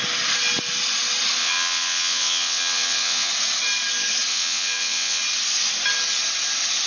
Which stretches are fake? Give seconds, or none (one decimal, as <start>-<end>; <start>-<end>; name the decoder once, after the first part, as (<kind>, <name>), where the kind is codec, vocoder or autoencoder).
1.4-3.3 (vocoder, WaveNeXt); 4.3-5.2